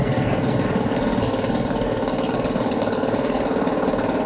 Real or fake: fake